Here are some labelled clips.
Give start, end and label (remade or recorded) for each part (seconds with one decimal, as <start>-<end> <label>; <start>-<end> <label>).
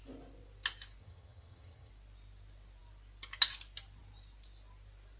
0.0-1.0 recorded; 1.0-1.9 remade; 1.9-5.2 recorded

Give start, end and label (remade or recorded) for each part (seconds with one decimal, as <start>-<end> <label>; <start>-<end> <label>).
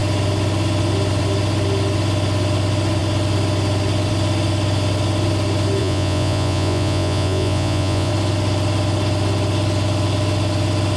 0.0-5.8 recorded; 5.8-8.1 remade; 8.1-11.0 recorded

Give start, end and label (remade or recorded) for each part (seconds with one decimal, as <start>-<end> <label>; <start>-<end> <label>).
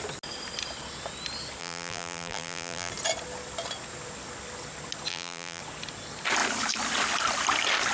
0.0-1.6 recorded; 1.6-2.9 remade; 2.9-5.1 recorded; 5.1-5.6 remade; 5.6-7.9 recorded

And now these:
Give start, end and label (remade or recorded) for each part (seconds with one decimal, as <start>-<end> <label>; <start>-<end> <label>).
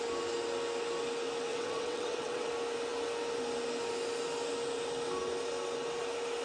0.0-1.5 recorded; 1.5-2.5 remade; 2.5-6.4 recorded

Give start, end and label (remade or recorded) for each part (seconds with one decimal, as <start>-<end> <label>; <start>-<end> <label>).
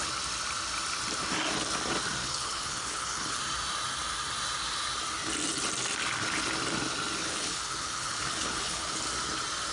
0.0-2.2 recorded; 2.2-3.4 remade; 3.4-7.2 recorded; 7.2-8.9 remade; 8.9-9.7 recorded